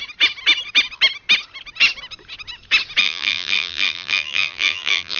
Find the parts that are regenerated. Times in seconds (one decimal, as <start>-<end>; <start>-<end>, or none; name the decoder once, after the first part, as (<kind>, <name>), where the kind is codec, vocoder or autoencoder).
3.0-5.2 (vocoder, BigVGAN v2)